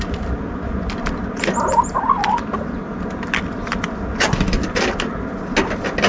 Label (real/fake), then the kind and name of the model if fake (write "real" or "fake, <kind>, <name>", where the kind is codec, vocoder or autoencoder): real